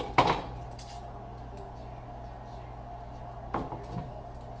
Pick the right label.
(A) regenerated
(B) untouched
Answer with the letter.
B